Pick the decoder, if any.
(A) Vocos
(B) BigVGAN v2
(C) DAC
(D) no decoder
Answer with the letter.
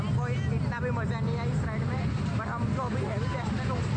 D